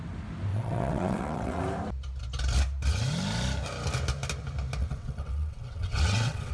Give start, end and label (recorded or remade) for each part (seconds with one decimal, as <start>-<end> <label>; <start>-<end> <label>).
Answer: 0.0-0.5 recorded; 0.5-1.6 remade; 1.6-4.8 recorded; 4.8-6.5 remade